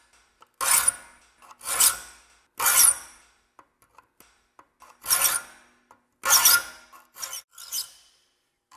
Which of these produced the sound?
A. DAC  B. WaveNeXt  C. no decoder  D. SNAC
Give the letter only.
C